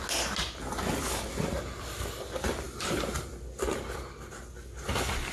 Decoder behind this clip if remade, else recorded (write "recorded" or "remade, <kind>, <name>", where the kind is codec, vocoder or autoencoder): recorded